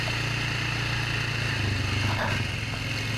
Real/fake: real